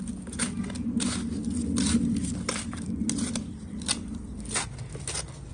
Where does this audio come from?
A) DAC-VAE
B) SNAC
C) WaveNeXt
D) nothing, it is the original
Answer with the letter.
D